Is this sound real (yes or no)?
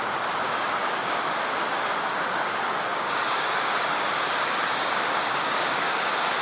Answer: no